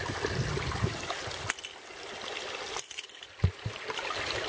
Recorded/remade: recorded